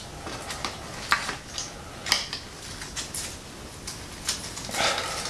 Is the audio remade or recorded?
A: recorded